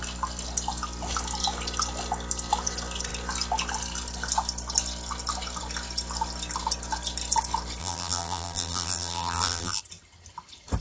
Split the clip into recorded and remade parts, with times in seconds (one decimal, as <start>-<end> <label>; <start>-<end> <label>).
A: 0.0-7.8 recorded; 7.8-9.8 remade; 9.8-10.8 recorded